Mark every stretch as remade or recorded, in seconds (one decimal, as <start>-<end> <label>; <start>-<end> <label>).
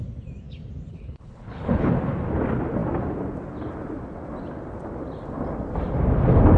0.0-0.9 recorded; 0.9-1.9 remade; 1.9-6.6 recorded